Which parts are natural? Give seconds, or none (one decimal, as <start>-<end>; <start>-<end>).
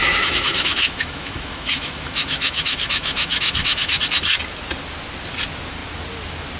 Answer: 4.0-6.6